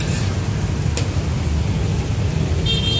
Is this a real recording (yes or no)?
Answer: yes